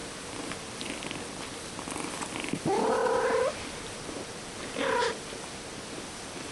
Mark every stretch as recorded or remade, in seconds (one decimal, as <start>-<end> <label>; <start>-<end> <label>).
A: 0.0-3.0 recorded; 3.0-4.6 remade; 4.6-6.5 recorded